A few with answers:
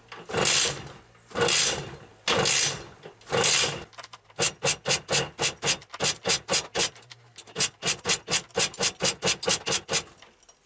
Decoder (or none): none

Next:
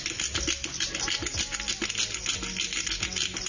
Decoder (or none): none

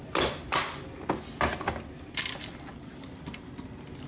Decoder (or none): none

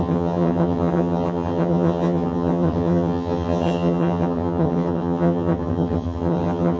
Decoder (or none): vocoder, HiFi-GAN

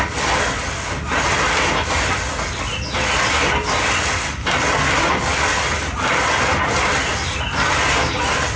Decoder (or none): none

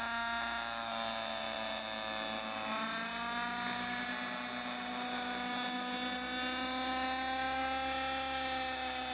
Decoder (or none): none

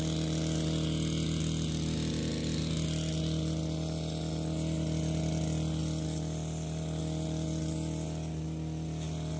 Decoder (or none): none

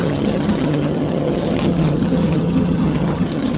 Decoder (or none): vocoder, HiFi-GAN